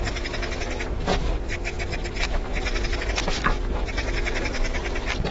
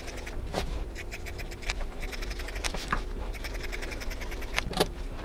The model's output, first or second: second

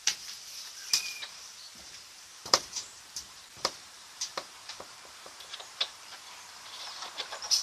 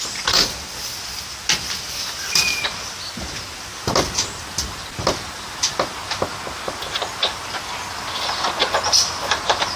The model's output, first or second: first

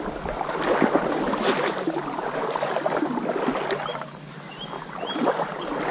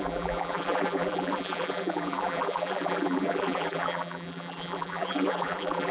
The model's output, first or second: second